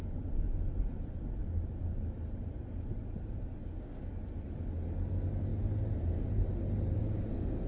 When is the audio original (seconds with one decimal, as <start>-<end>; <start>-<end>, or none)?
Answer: 0.0-3.6; 4.1-7.7